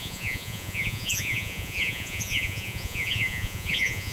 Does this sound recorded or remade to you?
remade